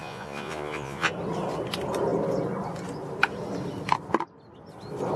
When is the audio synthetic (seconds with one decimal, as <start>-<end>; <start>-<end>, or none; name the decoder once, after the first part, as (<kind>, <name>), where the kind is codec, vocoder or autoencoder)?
0.0-1.1 (vocoder, Vocos)